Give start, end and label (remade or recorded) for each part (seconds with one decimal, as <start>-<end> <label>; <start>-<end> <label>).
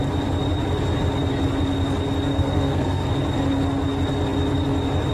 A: 0.0-2.3 recorded; 2.3-3.1 remade; 3.1-5.1 recorded